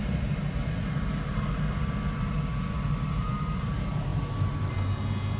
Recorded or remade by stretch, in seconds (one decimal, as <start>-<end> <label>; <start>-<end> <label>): 0.0-5.4 recorded